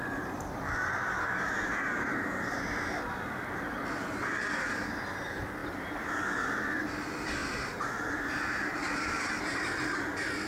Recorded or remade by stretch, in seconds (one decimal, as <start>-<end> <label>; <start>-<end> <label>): 0.0-5.6 recorded; 5.6-6.8 remade; 6.8-7.4 recorded; 7.4-8.4 remade; 8.4-8.8 recorded; 8.8-9.8 remade; 9.8-10.5 recorded